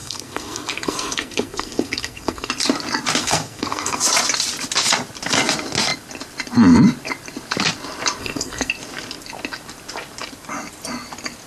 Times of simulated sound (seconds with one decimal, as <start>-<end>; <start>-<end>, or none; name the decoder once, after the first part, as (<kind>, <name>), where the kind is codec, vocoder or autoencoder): 0.0-2.5 (codec, SNAC); 3.2-4.0; 8.2-8.7